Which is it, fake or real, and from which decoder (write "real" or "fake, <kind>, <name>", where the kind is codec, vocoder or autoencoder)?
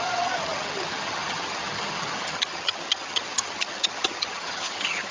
fake, vocoder, HiFi-GAN